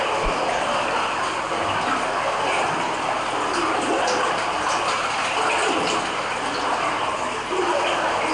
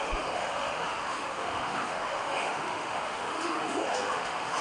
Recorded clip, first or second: first